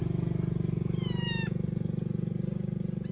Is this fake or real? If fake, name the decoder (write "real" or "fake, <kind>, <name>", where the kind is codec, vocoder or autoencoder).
real